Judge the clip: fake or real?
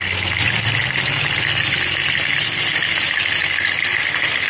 real